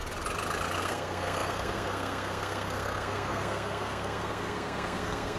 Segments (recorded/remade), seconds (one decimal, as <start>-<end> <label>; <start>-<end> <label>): 0.0-0.8 recorded; 0.8-5.4 remade